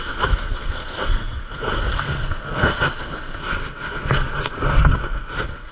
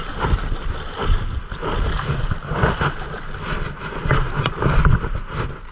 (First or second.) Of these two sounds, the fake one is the first